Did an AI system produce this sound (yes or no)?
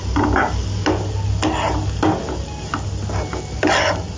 no